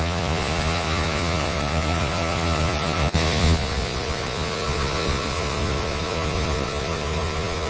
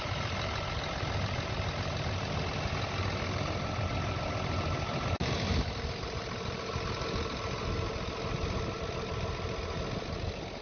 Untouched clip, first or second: second